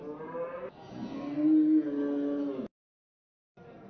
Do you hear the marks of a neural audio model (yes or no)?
no